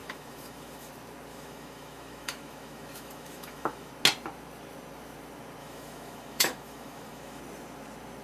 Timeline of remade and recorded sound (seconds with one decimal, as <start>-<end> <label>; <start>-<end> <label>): 0.0-0.9 remade; 0.9-1.3 recorded; 1.3-3.9 remade; 3.9-5.6 recorded; 5.6-7.4 remade; 7.4-8.2 recorded